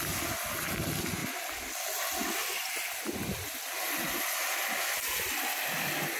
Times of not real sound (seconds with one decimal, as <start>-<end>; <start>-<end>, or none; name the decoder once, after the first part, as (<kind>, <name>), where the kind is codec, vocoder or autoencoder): none

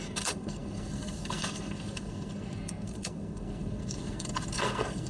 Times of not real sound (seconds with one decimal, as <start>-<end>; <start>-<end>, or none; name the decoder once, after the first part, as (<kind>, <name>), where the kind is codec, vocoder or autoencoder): 0.0-5.1 (codec, SNAC)

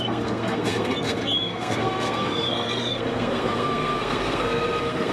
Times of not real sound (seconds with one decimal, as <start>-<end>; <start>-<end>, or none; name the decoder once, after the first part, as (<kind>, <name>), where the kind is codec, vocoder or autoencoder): 0.0-5.1 (codec, SNAC)

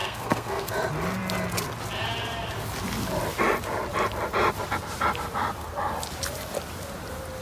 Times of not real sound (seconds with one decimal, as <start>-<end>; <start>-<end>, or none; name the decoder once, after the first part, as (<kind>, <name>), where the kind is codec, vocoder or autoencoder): 0.0-0.7 (codec, SNAC)

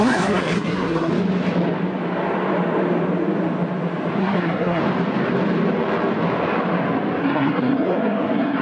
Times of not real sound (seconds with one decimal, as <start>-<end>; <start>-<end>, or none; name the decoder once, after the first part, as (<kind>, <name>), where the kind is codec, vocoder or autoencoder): 0.0-1.1 (codec, SNAC); 4.2-4.8; 7.2-8.6

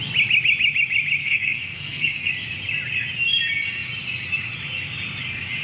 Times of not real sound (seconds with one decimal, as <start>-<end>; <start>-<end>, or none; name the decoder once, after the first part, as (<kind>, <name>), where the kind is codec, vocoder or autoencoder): 1.2-2.3 (codec, SNAC)

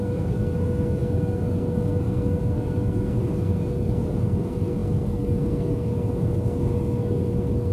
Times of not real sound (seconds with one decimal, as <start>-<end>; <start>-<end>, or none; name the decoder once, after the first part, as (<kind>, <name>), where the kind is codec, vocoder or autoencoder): 0.0-7.7 (codec, SNAC)